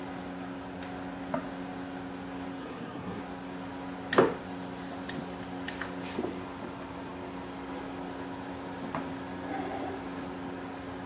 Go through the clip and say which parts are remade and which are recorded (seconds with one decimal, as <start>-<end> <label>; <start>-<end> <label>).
0.0-2.6 recorded; 2.6-3.2 remade; 3.2-11.1 recorded